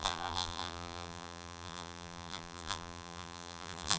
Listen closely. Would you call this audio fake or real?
fake